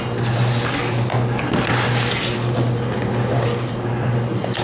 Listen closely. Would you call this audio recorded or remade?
recorded